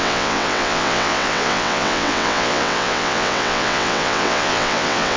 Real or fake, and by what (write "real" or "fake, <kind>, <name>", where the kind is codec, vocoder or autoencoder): fake, vocoder, WaveNeXt